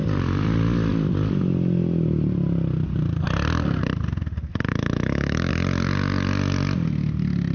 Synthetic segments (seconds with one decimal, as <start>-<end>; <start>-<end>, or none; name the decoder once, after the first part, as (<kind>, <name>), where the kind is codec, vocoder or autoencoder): 4.7-5.5 (autoencoder, DAC-VAE)